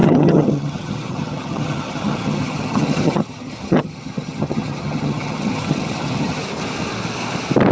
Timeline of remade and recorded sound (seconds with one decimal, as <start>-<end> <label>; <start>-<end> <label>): 0.0-6.4 remade; 6.4-7.7 recorded